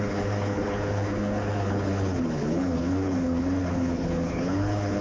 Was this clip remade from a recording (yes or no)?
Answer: yes